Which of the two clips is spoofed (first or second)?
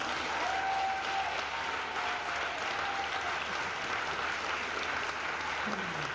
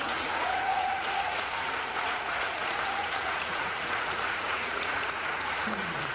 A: second